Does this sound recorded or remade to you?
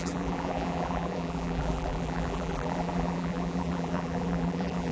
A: remade